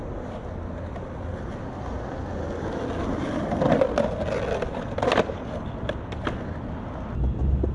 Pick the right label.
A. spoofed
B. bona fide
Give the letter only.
B